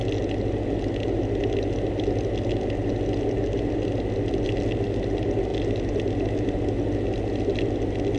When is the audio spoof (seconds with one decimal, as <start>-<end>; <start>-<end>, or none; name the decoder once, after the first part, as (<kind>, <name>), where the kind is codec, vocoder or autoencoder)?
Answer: none